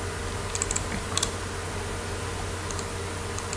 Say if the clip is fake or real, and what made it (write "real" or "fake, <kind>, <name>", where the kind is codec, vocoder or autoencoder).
real